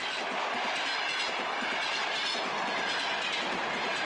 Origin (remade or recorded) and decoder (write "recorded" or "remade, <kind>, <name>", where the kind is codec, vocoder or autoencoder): recorded